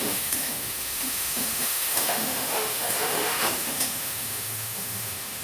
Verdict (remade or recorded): remade